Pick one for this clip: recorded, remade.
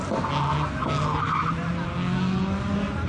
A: recorded